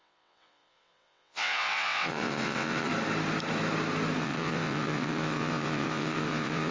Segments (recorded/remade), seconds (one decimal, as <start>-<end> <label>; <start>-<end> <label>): 0.0-2.9 remade; 2.9-4.2 recorded; 4.2-6.7 remade